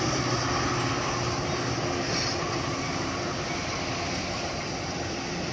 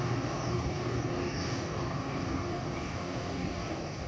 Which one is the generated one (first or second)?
second